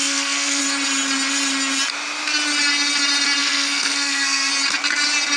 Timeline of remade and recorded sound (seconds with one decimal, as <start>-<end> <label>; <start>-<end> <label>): 0.0-0.6 remade; 0.6-3.4 recorded; 3.4-4.5 remade; 4.5-5.4 recorded